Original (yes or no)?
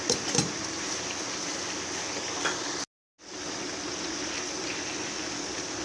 yes